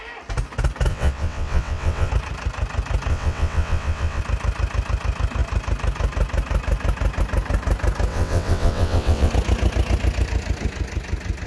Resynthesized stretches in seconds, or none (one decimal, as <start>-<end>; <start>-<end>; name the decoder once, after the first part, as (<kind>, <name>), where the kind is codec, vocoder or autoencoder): 0.9-2.1 (vocoder, WaveNeXt); 3.1-4.2; 8.1-9.3

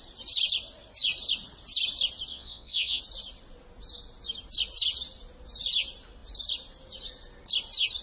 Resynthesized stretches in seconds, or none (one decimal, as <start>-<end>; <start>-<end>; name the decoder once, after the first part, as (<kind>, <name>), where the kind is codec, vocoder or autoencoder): 2.3-3.0 (vocoder, WaveNeXt)